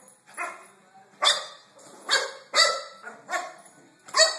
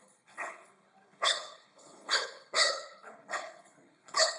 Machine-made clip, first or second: second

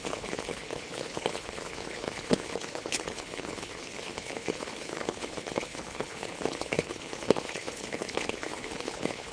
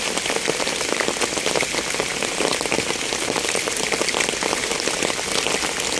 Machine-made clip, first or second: first